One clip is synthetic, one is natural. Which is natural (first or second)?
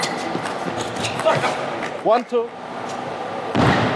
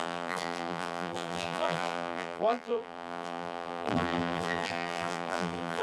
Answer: first